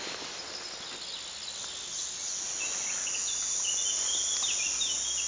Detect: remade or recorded recorded